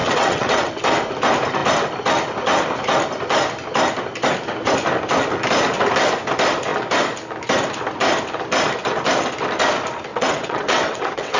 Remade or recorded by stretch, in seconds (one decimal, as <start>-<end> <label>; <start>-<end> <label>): 0.0-0.7 remade; 0.7-10.1 recorded; 10.1-11.4 remade